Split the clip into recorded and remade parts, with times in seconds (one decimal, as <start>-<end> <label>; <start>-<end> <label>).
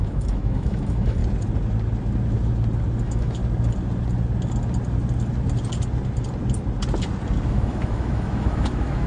0.0-1.2 remade; 1.2-3.0 recorded; 3.0-3.4 remade; 3.4-7.5 recorded; 7.5-9.1 remade